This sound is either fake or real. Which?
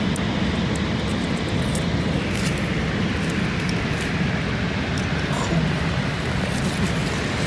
real